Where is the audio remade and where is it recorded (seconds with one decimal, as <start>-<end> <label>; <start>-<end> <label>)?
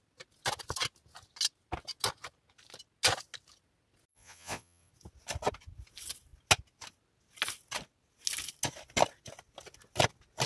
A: 0.0-4.1 recorded; 4.1-4.9 remade; 4.9-10.5 recorded